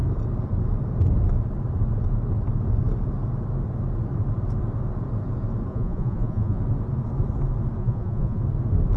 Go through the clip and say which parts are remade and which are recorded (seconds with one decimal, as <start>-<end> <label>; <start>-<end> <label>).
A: 0.0-5.7 recorded; 5.7-6.6 remade; 6.6-7.8 recorded; 7.8-8.4 remade; 8.4-9.0 recorded